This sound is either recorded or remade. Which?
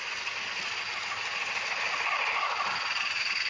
recorded